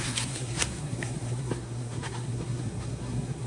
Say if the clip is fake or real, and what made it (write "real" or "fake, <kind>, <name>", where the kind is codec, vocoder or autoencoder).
fake, codec, SNAC